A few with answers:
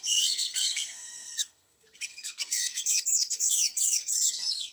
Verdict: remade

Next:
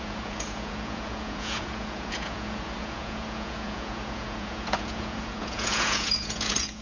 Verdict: remade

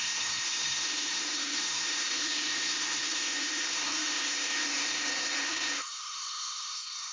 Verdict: remade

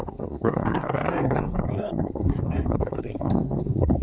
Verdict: remade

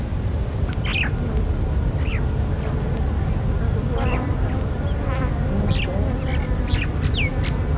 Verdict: recorded